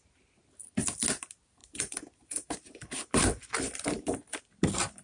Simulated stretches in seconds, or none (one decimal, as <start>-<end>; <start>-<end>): 1.6-3.6